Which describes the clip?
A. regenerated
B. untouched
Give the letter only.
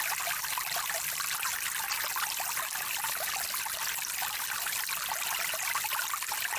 B